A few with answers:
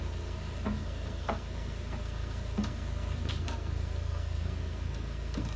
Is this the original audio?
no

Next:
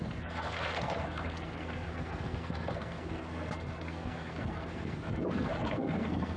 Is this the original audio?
no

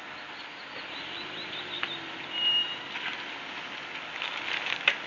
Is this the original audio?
yes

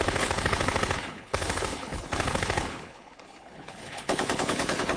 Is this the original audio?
no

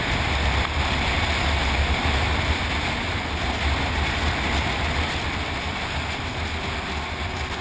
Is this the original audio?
yes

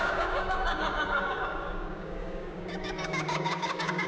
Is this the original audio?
no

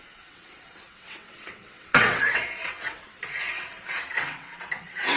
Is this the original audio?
no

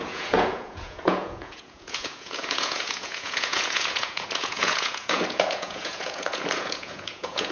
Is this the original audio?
no